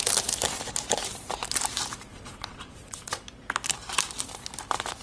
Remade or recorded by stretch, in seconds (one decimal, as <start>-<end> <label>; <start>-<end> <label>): 0.0-2.1 recorded; 2.1-3.1 remade; 3.1-5.0 recorded